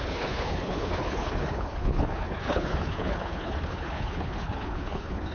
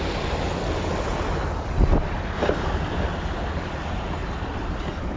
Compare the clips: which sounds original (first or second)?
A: second